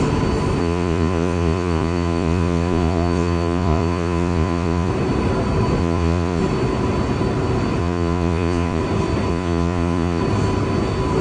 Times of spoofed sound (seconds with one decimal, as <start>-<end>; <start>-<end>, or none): 0.6-4.9; 5.8-6.4; 7.8-8.8; 9.3-10.2